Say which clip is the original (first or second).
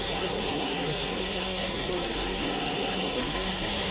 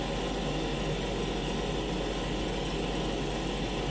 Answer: second